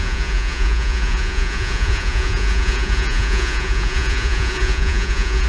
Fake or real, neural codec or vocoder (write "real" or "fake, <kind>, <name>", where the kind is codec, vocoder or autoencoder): fake, vocoder, Vocos